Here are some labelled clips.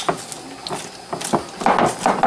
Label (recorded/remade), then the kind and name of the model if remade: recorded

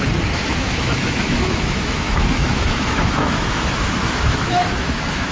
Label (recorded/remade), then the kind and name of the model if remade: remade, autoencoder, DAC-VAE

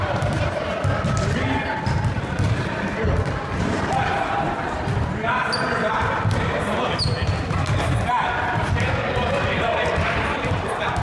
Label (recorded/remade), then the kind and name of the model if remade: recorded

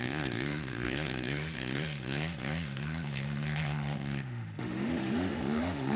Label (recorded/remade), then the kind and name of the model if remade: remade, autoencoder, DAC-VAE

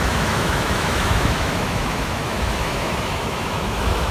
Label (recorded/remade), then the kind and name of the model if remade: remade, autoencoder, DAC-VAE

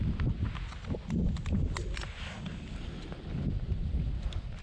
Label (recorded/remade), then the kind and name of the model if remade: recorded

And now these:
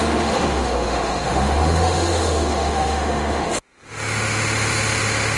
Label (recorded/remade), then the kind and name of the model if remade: remade, autoencoder, DAC-VAE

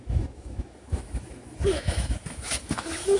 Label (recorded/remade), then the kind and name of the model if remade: remade, autoencoder, DAC-VAE